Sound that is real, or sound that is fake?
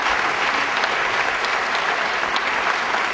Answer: real